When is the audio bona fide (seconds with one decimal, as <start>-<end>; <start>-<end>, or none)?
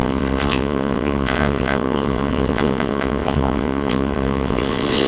none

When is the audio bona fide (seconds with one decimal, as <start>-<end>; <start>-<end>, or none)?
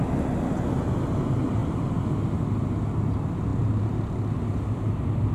0.0-5.3